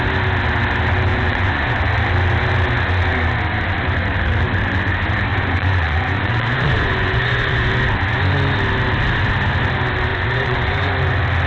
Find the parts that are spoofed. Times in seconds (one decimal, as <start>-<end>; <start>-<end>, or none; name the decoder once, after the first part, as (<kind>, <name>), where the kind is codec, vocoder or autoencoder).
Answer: 1.1-1.8 (vocoder, Vocos); 5.3-7.7; 10.1-10.9